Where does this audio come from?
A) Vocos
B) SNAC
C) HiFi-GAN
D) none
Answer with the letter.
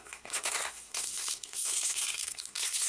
B